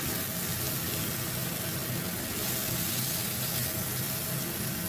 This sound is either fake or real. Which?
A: real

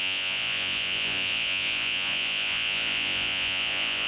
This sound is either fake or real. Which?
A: fake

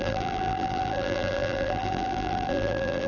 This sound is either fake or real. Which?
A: fake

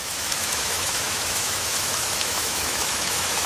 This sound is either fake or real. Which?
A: fake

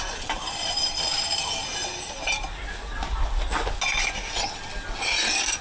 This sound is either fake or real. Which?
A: real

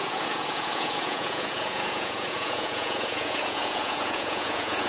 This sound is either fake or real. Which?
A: fake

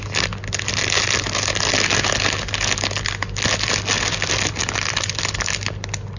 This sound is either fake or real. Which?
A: real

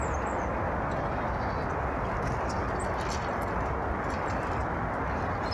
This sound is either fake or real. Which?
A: real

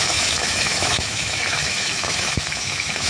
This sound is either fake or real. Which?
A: fake